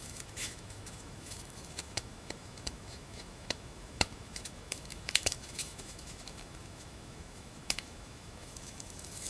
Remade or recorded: remade